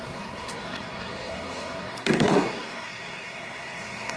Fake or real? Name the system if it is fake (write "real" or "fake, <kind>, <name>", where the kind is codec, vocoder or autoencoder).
fake, codec, SNAC